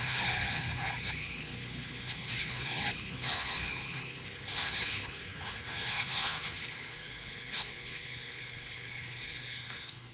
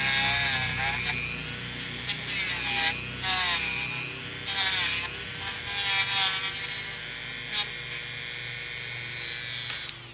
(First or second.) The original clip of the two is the second